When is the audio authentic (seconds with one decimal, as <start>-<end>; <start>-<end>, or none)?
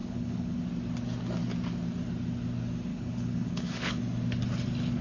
0.6-2.9; 4.0-5.0